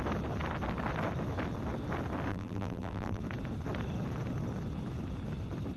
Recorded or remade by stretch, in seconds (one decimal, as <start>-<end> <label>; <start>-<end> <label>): 0.0-2.3 recorded; 2.3-3.2 remade; 3.2-5.8 recorded